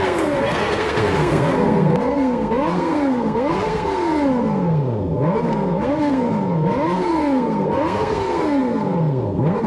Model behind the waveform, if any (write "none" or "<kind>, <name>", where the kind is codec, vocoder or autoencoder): codec, SNAC